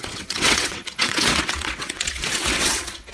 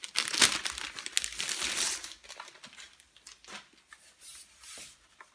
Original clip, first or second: second